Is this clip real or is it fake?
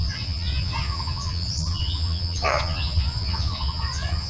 fake